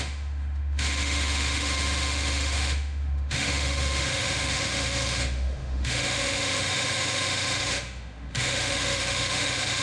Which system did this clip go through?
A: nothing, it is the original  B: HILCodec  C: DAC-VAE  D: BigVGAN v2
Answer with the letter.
C